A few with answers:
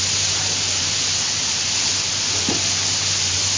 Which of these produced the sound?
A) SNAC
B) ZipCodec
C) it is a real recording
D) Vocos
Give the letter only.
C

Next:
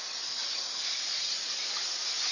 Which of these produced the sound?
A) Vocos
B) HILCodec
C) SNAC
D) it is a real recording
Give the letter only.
D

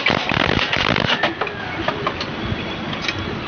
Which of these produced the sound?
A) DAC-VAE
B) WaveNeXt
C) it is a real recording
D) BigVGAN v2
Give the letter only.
C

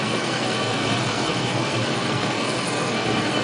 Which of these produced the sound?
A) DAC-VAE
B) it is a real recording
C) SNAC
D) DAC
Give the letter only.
C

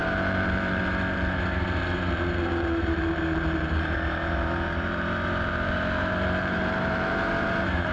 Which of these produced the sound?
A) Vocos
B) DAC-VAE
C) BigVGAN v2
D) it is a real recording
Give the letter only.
C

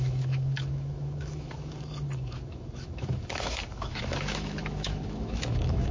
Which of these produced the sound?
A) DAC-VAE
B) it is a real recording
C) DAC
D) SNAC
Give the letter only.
A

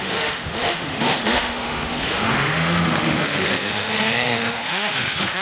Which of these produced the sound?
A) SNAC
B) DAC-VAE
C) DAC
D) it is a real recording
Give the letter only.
B